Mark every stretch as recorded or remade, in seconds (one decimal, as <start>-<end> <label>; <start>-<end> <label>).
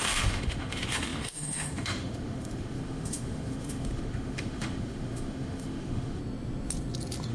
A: 0.0-6.2 remade; 6.2-7.3 recorded